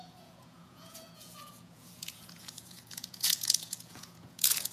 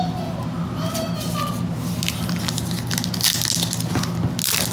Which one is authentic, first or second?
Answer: second